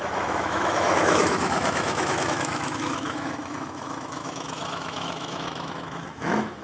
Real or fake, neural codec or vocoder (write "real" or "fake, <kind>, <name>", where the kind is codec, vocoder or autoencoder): fake, autoencoder, DAC-VAE